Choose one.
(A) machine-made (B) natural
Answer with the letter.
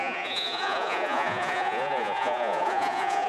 A